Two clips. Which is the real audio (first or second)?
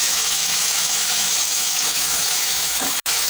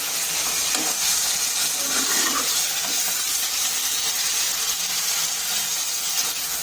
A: second